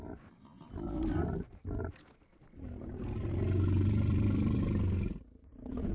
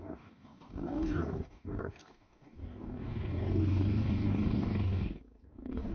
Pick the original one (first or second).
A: first